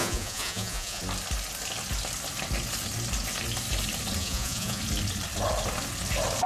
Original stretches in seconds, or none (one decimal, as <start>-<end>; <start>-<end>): 1.0-4.2; 4.8-6.5